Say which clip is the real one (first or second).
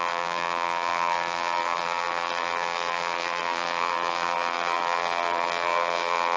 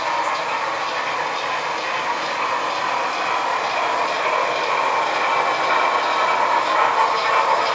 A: second